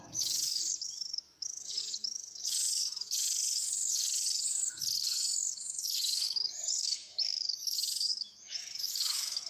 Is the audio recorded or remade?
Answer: remade